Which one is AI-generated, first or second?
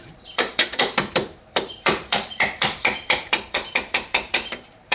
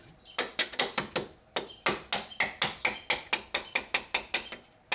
first